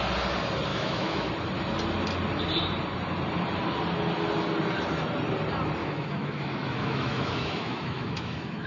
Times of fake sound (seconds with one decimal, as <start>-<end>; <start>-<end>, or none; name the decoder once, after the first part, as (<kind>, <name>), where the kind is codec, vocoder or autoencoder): 0.7-1.3 (autoencoder, DAC-VAE); 5.8-8.7